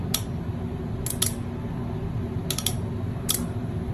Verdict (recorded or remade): recorded